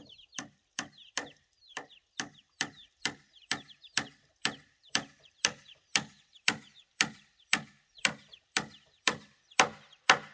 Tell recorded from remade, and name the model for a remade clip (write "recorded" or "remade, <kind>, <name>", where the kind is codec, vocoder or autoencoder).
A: remade, vocoder, BigVGAN v2